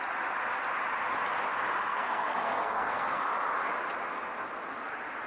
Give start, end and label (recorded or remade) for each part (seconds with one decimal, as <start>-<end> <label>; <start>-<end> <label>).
0.0-1.9 recorded; 1.9-3.3 remade; 3.3-5.3 recorded